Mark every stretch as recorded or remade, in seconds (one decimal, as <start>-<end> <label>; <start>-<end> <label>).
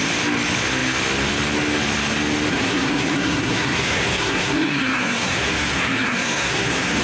0.0-2.5 recorded; 2.5-7.0 remade